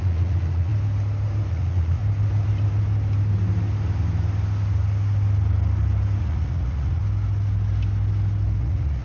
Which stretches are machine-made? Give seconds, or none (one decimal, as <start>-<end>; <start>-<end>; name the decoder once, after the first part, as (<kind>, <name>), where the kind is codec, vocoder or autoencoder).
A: 0.0-0.7 (vocoder, Vocos); 1.5-2.0; 6.2-7.0; 8.6-9.0